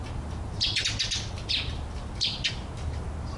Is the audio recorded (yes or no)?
yes